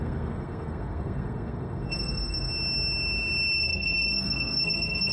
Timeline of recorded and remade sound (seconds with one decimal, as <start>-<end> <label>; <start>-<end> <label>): 0.0-2.5 remade; 2.5-3.6 recorded; 3.6-5.1 remade